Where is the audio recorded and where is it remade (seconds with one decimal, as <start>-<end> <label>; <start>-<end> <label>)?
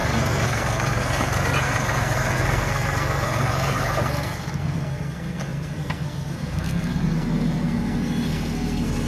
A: 0.0-9.1 remade